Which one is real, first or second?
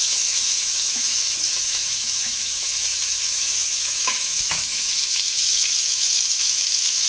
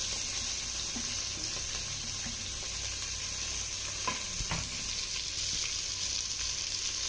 second